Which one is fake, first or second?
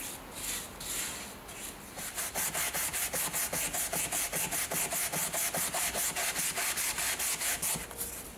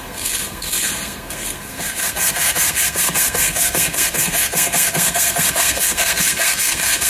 second